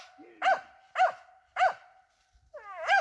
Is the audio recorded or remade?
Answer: recorded